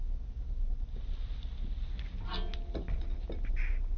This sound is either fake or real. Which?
real